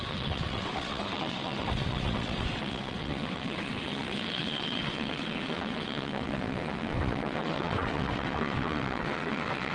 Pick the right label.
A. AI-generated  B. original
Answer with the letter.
A